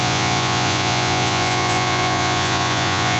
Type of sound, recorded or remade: remade